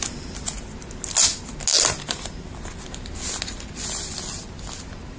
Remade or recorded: recorded